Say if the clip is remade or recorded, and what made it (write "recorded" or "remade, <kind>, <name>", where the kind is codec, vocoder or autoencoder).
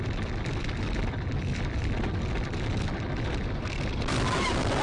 remade, vocoder, BigVGAN v2